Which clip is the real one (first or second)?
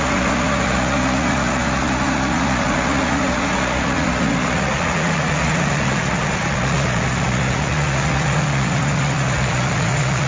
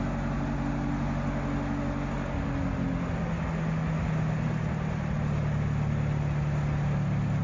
second